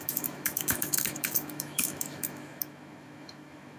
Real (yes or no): no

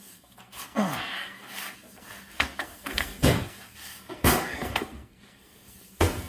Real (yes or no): no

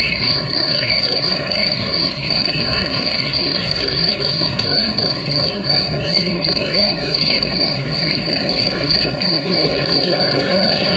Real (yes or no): no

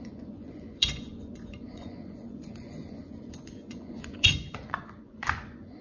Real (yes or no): no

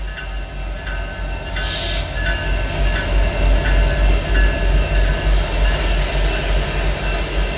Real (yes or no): yes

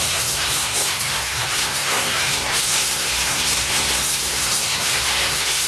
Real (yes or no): no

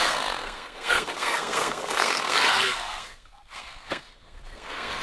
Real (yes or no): no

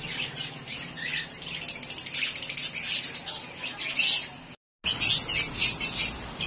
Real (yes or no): yes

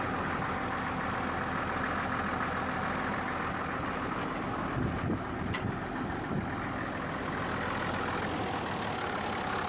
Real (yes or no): yes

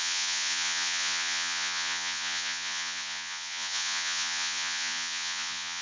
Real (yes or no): no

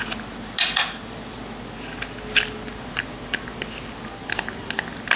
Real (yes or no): yes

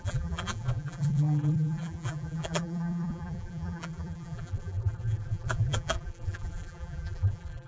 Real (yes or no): no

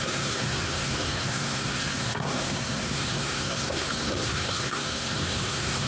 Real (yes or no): no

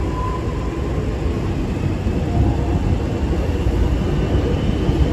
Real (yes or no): yes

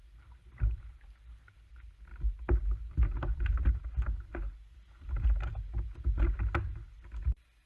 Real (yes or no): yes